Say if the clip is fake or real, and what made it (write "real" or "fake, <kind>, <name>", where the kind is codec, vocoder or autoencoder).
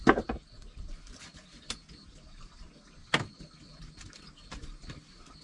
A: real